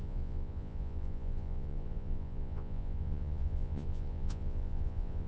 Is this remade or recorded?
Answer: remade